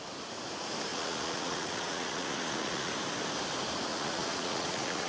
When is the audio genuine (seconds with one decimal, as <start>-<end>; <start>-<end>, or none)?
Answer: 0.0-0.9; 2.9-3.9